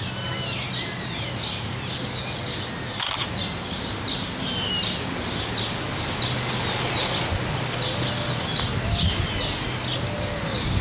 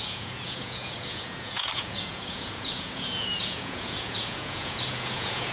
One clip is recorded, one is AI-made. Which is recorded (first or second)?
first